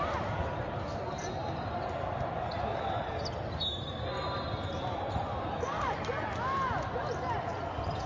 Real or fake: real